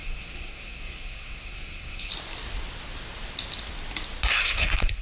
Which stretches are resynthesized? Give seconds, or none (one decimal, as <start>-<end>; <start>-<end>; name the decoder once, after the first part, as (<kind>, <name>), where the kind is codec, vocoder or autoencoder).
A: 0.0-2.1 (codec, SNAC); 4.3-5.0